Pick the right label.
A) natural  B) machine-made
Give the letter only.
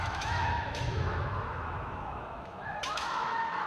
B